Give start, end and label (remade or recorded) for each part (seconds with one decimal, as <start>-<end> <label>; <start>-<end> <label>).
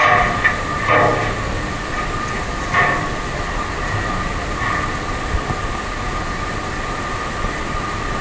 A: 0.0-8.2 recorded